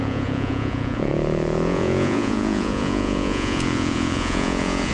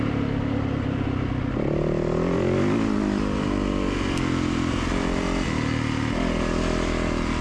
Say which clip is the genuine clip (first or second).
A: second